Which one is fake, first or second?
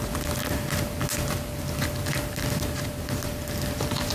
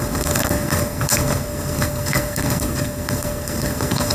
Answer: second